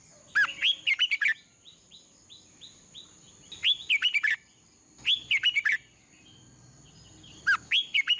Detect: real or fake real